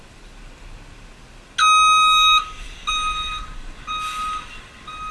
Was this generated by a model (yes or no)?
no